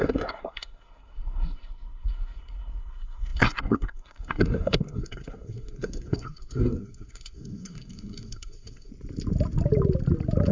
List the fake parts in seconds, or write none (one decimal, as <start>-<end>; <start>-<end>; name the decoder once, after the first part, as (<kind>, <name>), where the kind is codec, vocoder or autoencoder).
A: 0.0-8.9 (codec, SNAC)